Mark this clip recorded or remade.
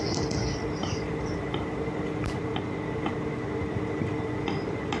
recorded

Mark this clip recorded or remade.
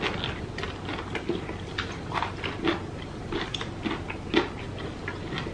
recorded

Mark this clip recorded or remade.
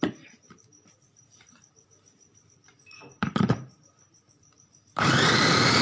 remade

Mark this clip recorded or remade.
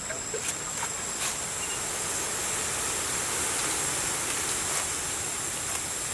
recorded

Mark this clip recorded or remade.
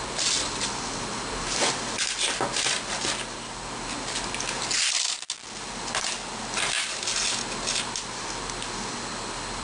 recorded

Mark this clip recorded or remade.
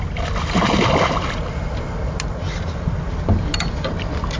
recorded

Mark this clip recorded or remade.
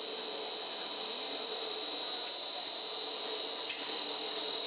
recorded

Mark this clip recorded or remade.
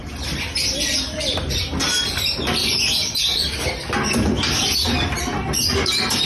recorded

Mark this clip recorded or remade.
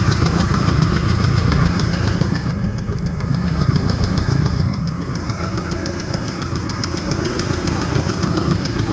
remade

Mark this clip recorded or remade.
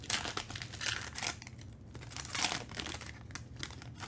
recorded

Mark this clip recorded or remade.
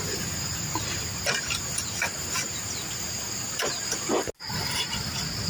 recorded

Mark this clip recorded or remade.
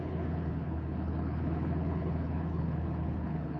remade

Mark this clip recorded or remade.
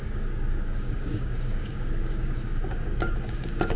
remade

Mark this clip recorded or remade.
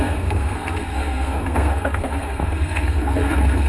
remade